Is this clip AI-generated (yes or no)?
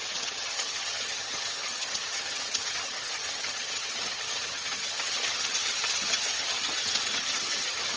yes